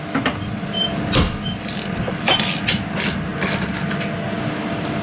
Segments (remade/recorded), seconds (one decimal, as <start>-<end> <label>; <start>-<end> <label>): 0.0-5.0 recorded